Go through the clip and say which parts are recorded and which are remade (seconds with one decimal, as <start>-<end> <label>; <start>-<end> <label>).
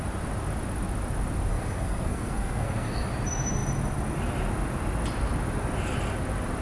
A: 0.0-1.5 recorded; 1.5-3.1 remade; 3.1-6.6 recorded